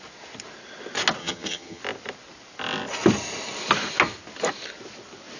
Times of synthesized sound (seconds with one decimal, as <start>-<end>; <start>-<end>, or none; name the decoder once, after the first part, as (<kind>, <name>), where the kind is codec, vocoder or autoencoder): 1.2-1.8 (vocoder, HiFi-GAN)